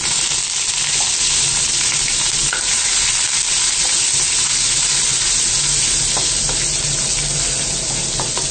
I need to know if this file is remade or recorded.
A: recorded